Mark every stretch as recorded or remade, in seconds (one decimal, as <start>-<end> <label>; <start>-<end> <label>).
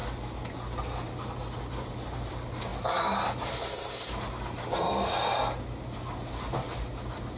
0.0-7.4 recorded